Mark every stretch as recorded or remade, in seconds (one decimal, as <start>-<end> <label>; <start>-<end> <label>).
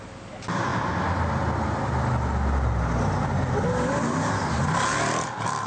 0.0-5.7 recorded